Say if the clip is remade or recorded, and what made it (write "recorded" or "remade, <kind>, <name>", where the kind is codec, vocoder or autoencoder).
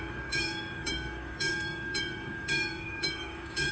remade, codec, DAC